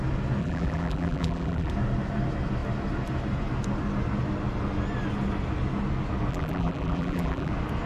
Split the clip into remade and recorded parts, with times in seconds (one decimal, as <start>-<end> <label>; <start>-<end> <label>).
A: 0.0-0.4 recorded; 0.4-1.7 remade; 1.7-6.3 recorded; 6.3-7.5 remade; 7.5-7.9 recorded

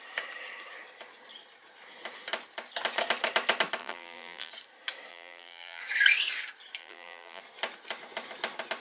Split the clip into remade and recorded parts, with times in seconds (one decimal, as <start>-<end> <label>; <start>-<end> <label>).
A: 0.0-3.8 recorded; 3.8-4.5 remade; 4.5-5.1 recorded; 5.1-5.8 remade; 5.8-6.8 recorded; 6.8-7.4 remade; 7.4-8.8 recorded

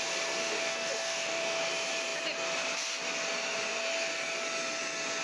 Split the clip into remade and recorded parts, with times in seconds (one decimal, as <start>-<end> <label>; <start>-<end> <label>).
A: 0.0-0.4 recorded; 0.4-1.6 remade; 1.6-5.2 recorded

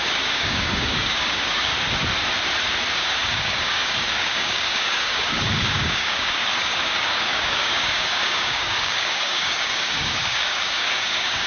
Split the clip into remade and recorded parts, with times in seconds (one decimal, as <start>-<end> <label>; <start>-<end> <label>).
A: 0.0-1.7 remade; 1.7-2.9 recorded; 2.9-11.5 remade

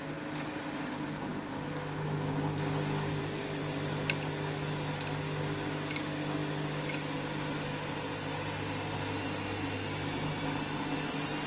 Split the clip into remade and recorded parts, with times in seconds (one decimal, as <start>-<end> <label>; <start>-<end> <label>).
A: 0.0-11.5 recorded

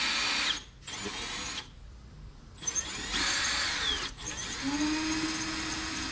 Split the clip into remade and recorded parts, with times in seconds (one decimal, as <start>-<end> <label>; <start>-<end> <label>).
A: 0.0-3.4 recorded; 3.4-4.0 remade; 4.0-6.1 recorded